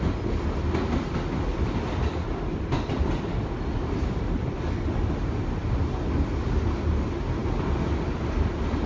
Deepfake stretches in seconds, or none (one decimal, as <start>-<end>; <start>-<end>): 1.5-5.7